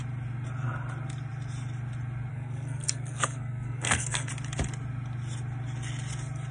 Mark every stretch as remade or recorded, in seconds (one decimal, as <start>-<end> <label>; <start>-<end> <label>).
0.0-2.3 recorded; 2.3-4.3 remade; 4.3-6.5 recorded